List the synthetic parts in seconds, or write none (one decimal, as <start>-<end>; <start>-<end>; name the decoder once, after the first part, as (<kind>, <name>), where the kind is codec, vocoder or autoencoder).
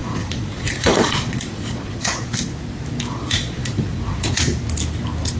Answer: 0.0-2.3 (vocoder, Vocos); 3.1-4.4